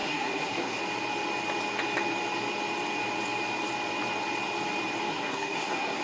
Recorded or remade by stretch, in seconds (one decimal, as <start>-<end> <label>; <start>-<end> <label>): 0.0-0.8 remade; 0.8-5.1 recorded; 5.1-6.0 remade